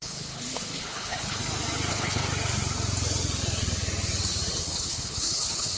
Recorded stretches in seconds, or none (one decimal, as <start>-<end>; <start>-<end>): 1.4-1.9; 2.3-4.6